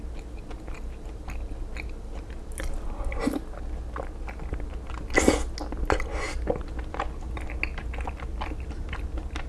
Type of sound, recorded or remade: recorded